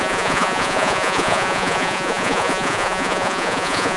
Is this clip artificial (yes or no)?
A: yes